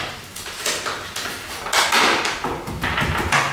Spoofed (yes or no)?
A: no